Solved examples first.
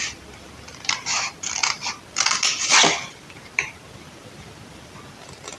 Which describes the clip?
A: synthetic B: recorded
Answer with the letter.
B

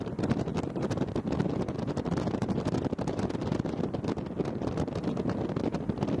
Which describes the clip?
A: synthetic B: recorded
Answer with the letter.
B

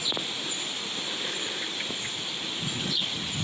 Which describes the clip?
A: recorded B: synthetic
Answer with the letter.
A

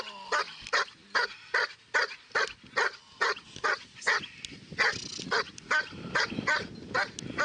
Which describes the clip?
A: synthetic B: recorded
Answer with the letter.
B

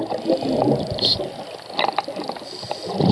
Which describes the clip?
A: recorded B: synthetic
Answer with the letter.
A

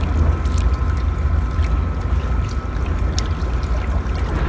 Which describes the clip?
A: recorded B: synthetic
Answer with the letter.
A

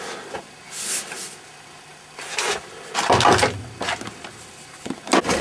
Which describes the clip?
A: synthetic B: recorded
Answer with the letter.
B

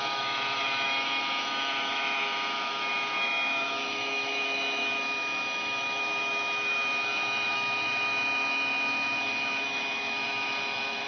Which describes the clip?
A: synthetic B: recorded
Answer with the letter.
A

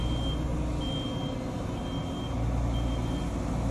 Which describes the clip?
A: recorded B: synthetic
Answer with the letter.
A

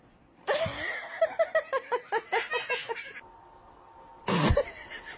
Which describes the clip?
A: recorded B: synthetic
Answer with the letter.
A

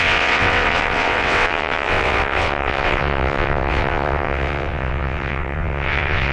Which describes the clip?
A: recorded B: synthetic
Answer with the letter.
B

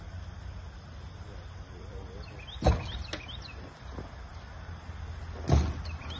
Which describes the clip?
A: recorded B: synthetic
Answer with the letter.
A